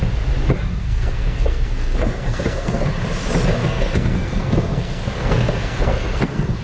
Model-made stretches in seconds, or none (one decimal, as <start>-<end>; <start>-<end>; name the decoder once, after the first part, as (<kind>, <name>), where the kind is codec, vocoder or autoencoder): 0.8-2.9 (codec, SNAC); 3.6-6.6